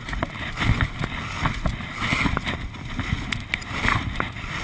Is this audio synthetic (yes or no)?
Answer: no